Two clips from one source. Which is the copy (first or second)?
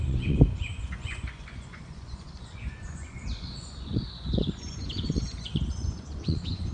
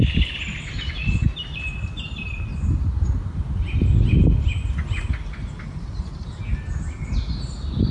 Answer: first